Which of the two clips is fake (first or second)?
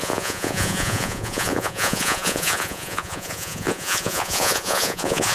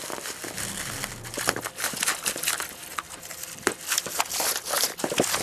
first